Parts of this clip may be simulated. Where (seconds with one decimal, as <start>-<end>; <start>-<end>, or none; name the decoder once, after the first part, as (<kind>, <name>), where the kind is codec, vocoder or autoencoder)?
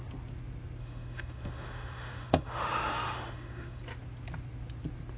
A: 0.8-3.8 (autoencoder, DAC-VAE)